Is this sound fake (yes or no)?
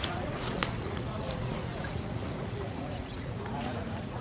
yes